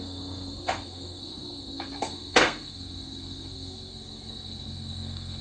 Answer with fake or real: fake